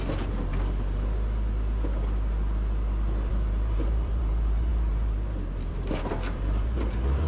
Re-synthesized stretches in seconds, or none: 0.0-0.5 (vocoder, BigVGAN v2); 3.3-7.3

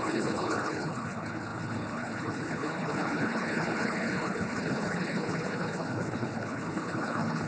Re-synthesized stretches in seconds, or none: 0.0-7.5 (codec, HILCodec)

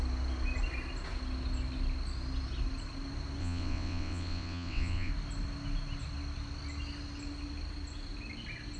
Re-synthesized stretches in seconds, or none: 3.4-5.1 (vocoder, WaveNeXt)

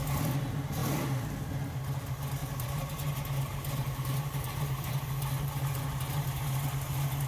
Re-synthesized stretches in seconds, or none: 2.4-4.9 (vocoder, BigVGAN v2)

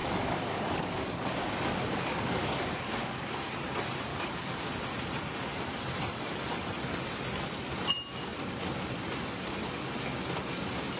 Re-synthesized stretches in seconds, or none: 0.0-3.3 (codec, DAC); 4.1-4.7